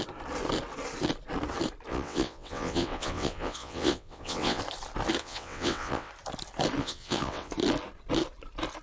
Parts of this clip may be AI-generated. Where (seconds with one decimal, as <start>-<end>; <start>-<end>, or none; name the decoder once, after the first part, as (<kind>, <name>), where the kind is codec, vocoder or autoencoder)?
1.9-4.6 (vocoder, WaveNeXt); 5.2-6.1; 6.8-7.5